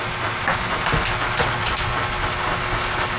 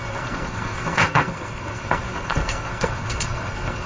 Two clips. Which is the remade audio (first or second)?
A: second